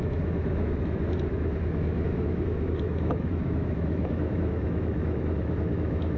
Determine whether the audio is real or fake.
fake